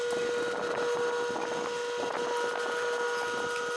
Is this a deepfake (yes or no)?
no